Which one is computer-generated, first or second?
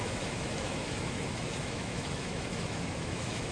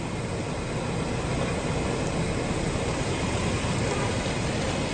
first